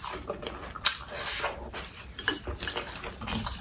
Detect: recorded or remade remade